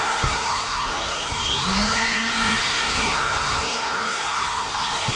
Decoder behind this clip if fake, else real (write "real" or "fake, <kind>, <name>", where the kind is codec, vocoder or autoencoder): fake, codec, SNAC